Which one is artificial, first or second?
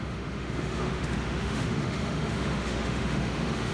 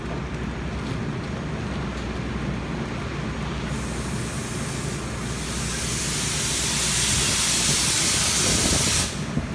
first